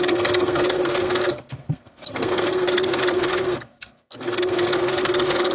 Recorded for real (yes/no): no